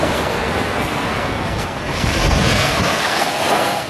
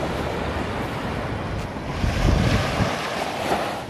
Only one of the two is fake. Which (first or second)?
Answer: first